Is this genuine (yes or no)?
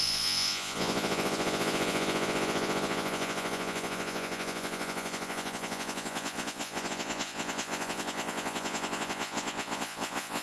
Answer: no